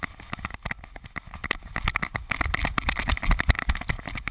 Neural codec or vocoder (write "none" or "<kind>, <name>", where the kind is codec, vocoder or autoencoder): none